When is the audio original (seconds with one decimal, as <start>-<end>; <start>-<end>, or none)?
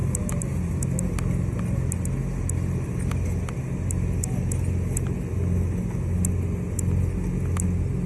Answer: 0.7-8.1